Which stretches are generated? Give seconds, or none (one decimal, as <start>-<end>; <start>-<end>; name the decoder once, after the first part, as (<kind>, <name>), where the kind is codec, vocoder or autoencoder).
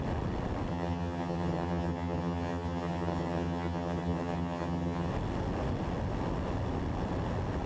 0.7-5.1 (vocoder, HiFi-GAN)